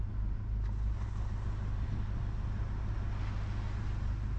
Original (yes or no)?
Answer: yes